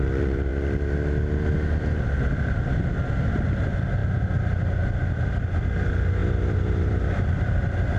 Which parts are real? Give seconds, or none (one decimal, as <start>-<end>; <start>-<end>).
0.0-6.2; 7.6-8.0